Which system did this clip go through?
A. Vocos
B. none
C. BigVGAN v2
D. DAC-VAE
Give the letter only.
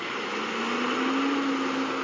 B